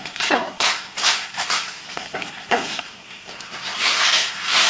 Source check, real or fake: fake